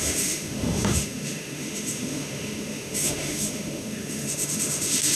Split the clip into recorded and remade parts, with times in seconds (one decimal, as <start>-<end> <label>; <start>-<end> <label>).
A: 0.0-5.2 remade